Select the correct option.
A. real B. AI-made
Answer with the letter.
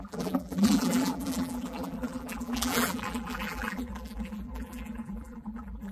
B